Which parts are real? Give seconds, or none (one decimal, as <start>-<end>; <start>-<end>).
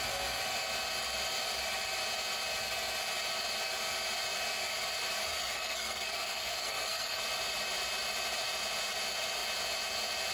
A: 0.0-5.4; 7.2-10.3